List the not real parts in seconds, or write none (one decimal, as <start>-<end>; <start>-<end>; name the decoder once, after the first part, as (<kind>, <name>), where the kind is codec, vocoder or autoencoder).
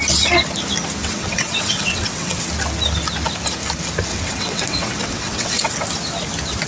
1.0-2.4 (vocoder, WaveNeXt); 4.1-5.7